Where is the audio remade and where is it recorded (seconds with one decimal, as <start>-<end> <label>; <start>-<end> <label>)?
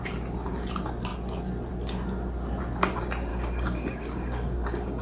0.0-3.3 recorded; 3.3-5.0 remade